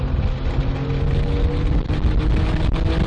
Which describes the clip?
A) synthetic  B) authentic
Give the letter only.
B